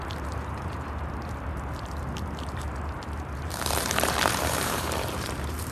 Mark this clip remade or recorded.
remade